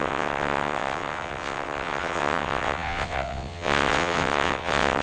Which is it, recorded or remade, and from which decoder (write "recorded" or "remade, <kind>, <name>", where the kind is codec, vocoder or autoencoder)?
remade, vocoder, WaveNeXt